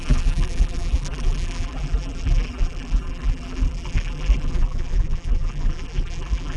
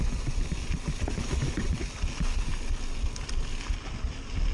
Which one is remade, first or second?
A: first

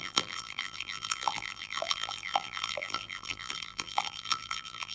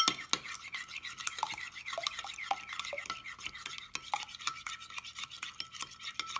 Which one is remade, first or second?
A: first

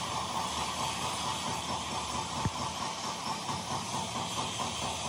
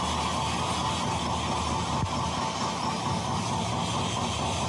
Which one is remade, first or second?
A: first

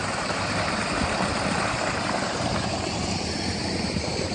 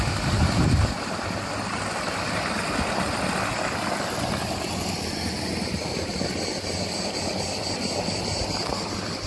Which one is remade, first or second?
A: first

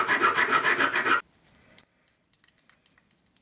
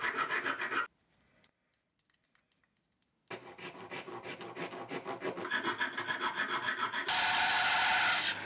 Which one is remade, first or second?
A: first